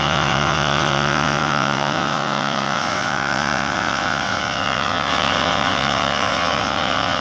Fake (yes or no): yes